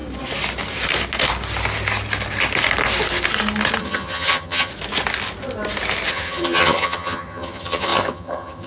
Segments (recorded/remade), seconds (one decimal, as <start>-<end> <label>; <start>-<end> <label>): 0.0-3.8 recorded; 3.8-4.7 remade; 4.7-6.1 recorded; 6.1-8.7 remade